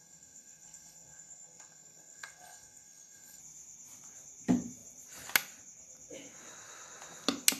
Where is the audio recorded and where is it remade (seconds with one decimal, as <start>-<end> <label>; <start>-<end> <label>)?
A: 0.0-3.4 remade; 3.4-7.6 recorded